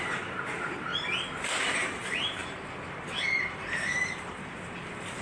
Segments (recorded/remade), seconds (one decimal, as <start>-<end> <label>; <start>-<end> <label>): 0.0-0.9 remade; 0.9-1.6 recorded; 1.6-5.2 remade